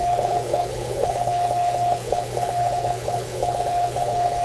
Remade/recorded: remade